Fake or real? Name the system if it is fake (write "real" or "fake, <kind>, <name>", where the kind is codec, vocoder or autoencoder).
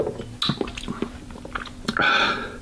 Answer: real